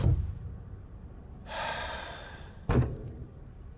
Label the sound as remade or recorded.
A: remade